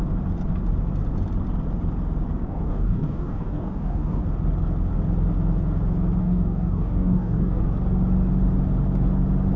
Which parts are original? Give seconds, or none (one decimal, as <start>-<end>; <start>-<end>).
0.0-2.4; 4.2-6.2; 7.6-9.6